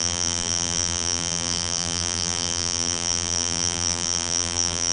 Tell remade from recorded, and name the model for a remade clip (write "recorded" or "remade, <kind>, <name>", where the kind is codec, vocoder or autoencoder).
remade, vocoder, BigVGAN v2